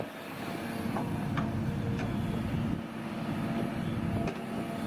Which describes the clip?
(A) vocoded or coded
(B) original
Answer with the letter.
B